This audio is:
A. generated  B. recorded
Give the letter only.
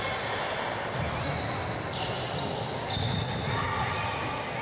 B